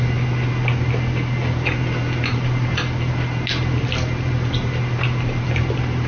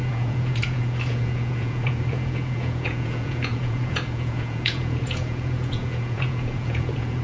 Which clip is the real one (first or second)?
first